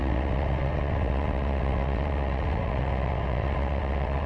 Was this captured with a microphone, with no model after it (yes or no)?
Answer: no